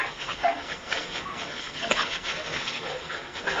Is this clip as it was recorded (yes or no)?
no